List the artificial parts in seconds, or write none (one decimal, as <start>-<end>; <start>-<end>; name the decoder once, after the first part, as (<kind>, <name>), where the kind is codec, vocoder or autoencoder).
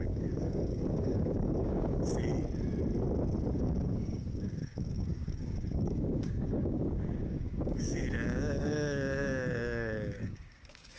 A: 0.0-2.3 (codec, DAC); 3.5-11.0